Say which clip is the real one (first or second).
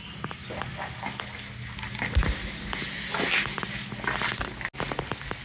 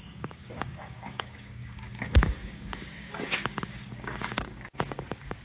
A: first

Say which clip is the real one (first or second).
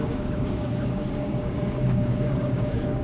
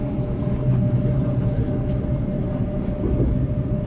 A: second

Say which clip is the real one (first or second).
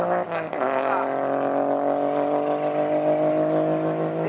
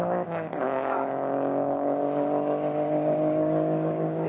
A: first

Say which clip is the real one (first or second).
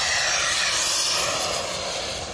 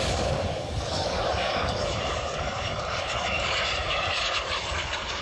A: first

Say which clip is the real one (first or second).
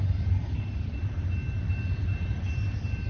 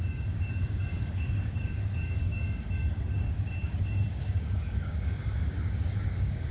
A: first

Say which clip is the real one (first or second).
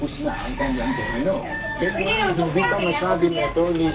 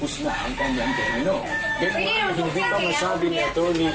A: second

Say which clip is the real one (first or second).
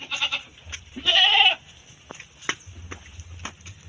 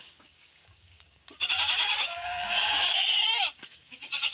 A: first